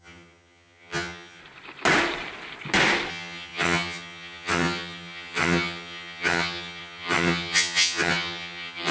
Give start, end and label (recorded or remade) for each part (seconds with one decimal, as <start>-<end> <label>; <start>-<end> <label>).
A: 0.0-1.4 remade; 1.4-3.1 recorded; 3.1-8.9 remade